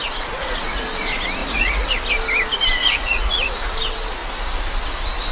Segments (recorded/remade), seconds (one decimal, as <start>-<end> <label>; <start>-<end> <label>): 0.0-0.4 recorded; 0.4-1.0 remade; 1.0-1.4 recorded; 1.4-1.9 remade; 1.9-2.8 recorded; 2.8-3.6 remade; 3.6-5.3 recorded